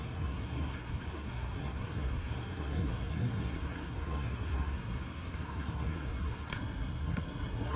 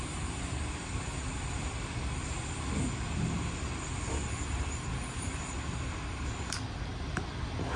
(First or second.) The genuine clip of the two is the second